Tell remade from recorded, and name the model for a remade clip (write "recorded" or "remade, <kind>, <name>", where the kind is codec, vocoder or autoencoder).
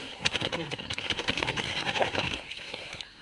remade, codec, SNAC